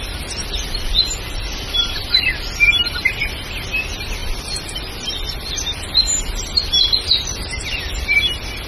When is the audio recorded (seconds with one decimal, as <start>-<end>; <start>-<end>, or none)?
0.0-4.2; 6.6-8.7